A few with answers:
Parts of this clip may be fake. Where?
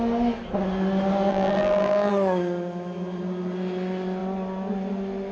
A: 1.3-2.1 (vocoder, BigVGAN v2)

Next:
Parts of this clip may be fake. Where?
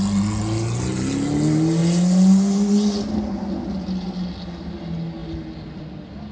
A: none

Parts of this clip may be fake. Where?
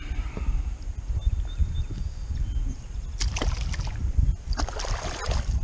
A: none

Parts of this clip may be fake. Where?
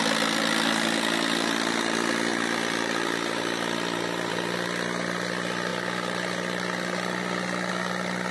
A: none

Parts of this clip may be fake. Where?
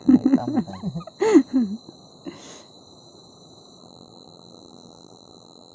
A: 0.0-0.4 (vocoder, BigVGAN v2); 3.8-5.7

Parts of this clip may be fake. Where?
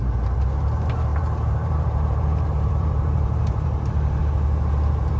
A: 1.1-4.2 (vocoder, BigVGAN v2)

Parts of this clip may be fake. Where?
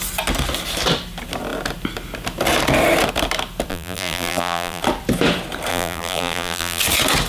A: 3.7-4.8 (vocoder, BigVGAN v2); 5.7-6.8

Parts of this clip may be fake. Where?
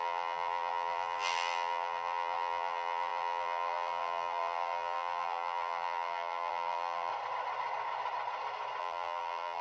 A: 0.0-7.1 (vocoder, BigVGAN v2); 8.8-9.6